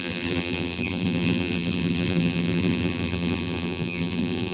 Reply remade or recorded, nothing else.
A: remade